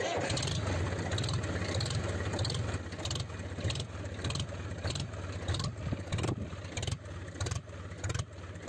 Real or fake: real